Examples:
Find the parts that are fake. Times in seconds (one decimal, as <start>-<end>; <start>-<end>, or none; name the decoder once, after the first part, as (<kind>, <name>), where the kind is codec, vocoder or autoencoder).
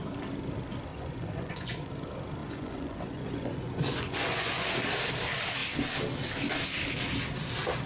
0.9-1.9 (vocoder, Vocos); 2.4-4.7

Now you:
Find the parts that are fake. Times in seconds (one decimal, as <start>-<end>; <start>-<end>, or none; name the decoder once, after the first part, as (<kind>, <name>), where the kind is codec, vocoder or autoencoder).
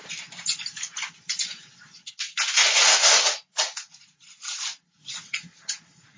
2.6-6.2 (vocoder, Vocos)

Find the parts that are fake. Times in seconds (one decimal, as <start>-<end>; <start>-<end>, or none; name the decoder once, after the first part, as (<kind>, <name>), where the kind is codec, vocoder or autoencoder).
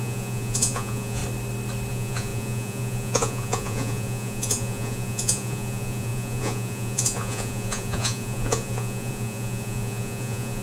0.0-1.2 (vocoder, Vocos); 1.9-10.6